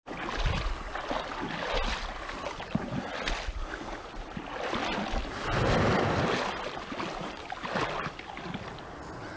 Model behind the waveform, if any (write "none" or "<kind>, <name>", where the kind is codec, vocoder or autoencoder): none